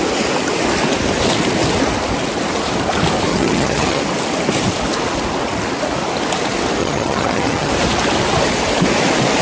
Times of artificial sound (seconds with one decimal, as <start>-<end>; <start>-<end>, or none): 3.3-4.0; 6.8-7.7